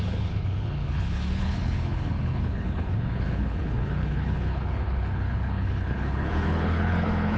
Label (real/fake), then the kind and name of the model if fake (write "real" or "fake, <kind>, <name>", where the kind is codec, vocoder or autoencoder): fake, codec, HILCodec